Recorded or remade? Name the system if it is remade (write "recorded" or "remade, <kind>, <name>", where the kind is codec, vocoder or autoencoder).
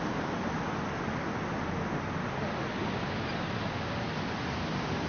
recorded